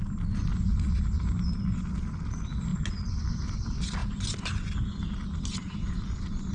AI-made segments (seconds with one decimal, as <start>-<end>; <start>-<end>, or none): none

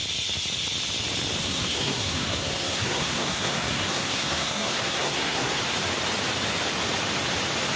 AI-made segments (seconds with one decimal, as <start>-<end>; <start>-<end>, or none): 1.4-5.6

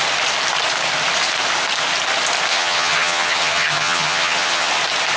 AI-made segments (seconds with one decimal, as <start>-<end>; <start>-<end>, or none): 2.5-4.7